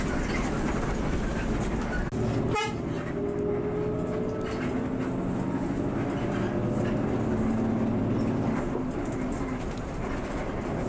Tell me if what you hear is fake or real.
real